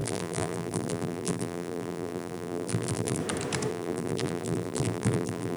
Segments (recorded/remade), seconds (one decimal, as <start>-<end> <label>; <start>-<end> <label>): 0.0-3.2 remade; 3.2-3.7 recorded; 3.7-5.6 remade